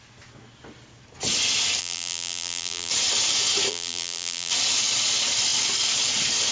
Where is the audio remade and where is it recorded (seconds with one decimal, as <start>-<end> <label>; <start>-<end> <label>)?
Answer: 0.0-1.8 recorded; 1.8-2.9 remade; 2.9-3.7 recorded; 3.7-4.5 remade; 4.5-6.5 recorded